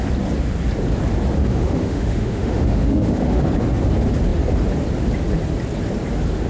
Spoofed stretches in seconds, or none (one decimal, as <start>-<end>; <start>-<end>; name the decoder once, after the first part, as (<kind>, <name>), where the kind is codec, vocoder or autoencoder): 1.5-3.4 (autoencoder, DAC-VAE)